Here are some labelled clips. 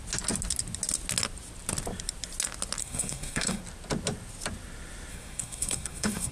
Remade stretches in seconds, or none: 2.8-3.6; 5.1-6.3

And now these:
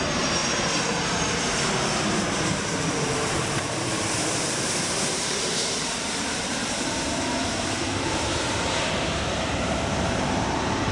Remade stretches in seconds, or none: 0.0-10.9